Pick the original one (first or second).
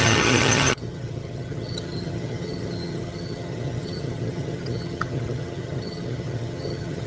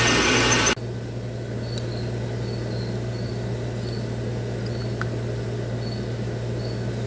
second